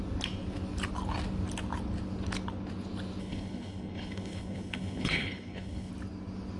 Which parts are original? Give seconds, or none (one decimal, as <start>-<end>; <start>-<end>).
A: 0.0-3.2; 5.9-6.6

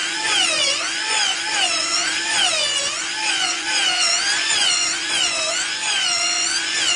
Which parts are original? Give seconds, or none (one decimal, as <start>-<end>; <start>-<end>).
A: none

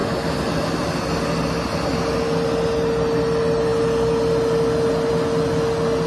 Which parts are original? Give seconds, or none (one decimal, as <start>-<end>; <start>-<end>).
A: 0.0-6.1

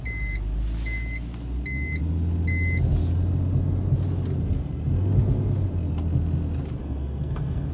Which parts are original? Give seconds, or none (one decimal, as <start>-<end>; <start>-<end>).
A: 0.0-6.8

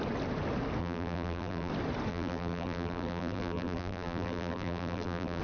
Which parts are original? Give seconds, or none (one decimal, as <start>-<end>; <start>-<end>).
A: 0.0-0.8; 1.7-2.1

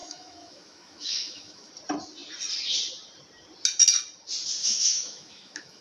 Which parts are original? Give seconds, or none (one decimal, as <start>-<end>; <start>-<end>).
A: 1.7-4.6

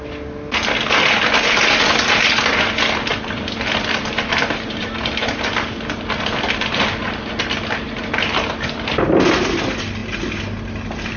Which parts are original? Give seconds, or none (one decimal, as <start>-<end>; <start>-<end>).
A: 0.0-11.2